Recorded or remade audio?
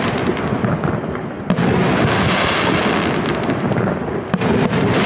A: recorded